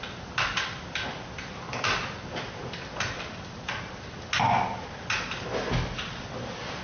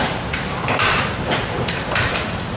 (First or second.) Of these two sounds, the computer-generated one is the second